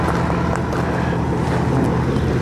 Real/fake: real